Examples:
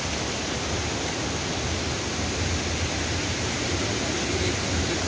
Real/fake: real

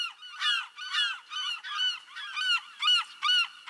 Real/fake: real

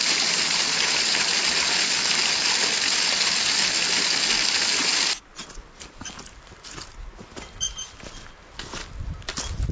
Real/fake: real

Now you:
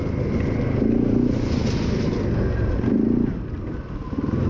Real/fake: real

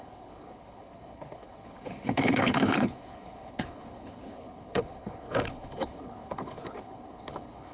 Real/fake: fake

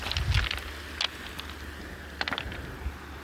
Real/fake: real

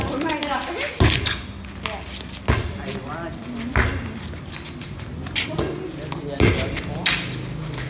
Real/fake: real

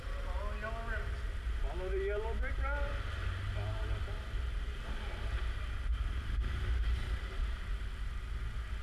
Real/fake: real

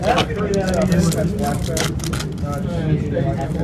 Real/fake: real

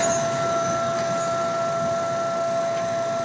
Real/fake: real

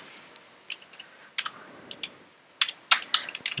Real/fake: real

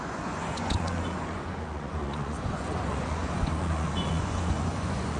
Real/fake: fake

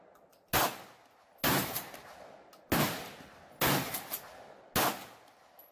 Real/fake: real